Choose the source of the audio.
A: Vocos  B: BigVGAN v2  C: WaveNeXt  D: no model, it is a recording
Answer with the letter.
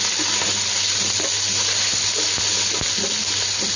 D